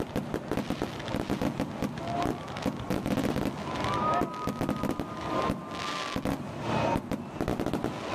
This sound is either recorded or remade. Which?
recorded